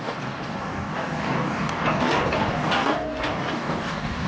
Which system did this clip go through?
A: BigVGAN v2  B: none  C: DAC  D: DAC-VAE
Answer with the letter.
C